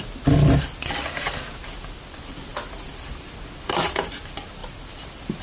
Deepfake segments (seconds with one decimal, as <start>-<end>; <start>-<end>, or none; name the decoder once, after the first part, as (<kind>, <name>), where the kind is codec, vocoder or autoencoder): none

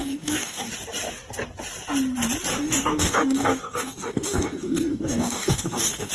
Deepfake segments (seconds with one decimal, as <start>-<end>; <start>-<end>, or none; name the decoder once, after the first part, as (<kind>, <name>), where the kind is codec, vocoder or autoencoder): 0.0-0.7 (codec, DAC); 2.5-6.1